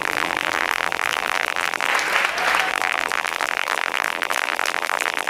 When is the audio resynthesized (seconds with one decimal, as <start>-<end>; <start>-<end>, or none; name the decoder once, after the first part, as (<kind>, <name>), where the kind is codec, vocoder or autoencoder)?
0.0-1.9 (vocoder, BigVGAN v2); 2.7-5.3